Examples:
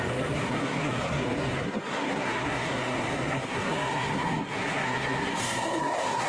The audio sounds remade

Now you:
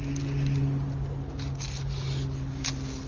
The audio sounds recorded